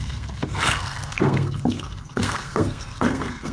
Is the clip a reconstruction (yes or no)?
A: yes